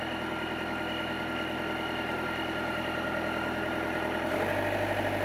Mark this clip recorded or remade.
recorded